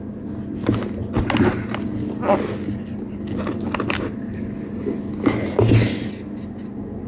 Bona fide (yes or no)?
yes